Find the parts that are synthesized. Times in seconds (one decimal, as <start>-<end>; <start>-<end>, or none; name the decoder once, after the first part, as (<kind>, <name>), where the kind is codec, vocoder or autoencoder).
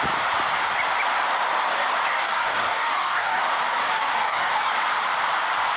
2.1-3.4 (codec, DAC); 3.8-4.7